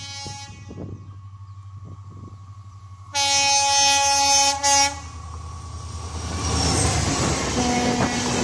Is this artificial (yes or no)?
no